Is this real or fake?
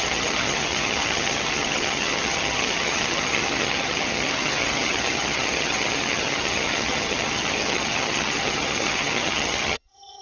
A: fake